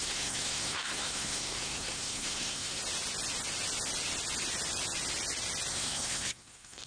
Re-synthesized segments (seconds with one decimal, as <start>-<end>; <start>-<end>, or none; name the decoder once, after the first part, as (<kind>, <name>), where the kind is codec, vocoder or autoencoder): 0.0-2.8 (codec, SNAC); 5.7-6.9